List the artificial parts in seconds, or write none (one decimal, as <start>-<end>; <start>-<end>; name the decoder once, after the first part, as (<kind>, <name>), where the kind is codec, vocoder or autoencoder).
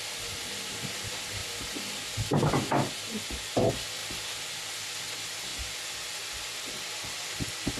none